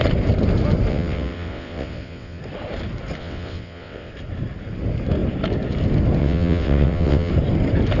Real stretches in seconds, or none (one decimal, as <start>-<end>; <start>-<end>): 0.0-0.9; 2.4-3.2; 4.1-6.2; 7.3-8.0